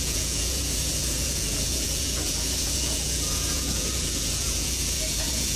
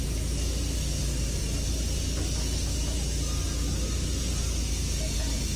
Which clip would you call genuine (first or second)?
second